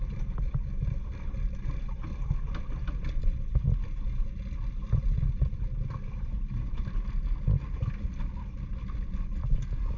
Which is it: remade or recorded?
recorded